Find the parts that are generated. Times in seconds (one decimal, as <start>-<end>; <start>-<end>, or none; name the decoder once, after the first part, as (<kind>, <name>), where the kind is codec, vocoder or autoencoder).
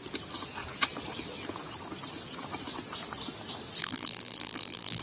3.8-5.0 (vocoder, BigVGAN v2)